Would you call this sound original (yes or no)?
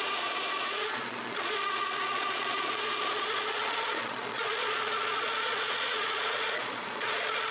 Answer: no